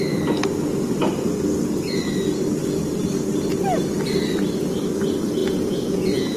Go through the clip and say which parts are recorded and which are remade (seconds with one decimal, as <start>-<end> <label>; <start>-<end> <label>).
0.0-5.4 recorded; 5.4-6.4 remade